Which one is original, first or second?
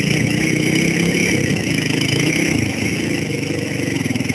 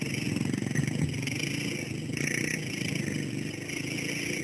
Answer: second